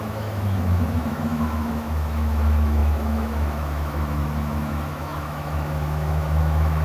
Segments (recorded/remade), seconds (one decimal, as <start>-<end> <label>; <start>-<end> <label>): 0.0-6.8 remade